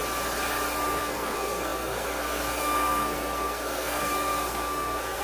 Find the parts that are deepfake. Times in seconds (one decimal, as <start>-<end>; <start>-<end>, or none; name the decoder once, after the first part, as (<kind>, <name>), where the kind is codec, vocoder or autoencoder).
1.0-5.2 (codec, SNAC)